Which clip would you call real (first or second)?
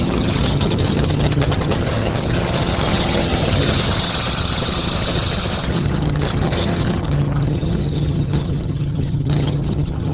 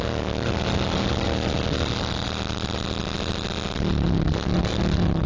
second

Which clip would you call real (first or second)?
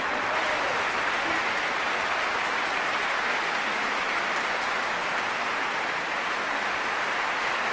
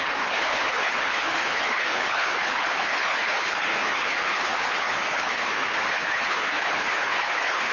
first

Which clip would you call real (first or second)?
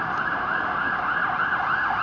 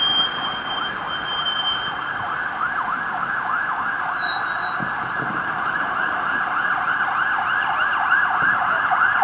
first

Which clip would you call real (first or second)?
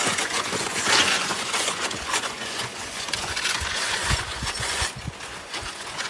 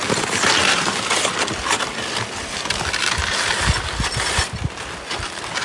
second